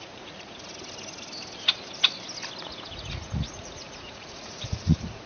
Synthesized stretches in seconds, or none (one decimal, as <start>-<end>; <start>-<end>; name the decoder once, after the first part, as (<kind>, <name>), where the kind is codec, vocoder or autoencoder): 0.0-0.7 (vocoder, Vocos); 2.6-5.3